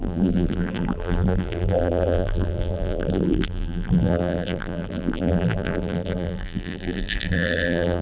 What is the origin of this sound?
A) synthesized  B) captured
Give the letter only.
A